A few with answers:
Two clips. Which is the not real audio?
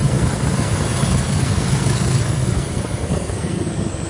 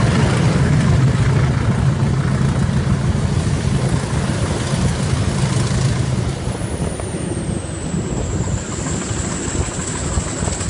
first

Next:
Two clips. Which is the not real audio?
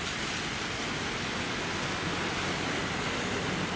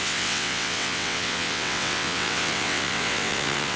second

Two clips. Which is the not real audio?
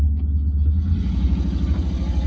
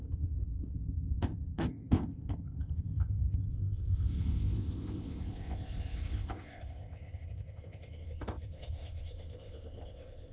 second